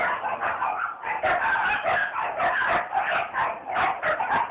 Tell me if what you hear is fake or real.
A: real